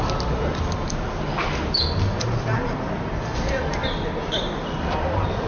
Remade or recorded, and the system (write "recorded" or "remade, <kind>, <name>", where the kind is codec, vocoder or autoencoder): recorded